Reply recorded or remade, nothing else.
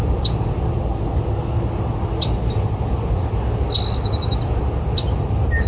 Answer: recorded